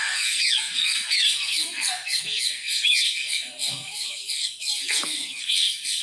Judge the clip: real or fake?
fake